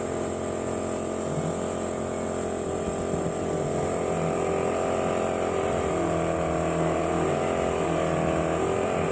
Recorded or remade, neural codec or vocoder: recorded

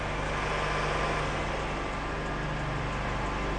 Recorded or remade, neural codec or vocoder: recorded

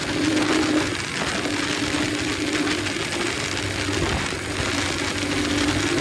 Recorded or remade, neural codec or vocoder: recorded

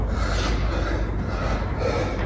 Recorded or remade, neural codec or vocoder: recorded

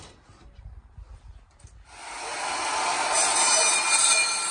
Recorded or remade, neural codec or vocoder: recorded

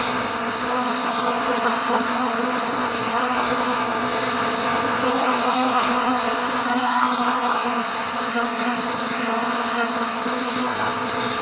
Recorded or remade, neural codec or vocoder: remade, codec, SNAC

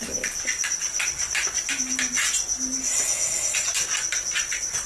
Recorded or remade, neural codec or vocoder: recorded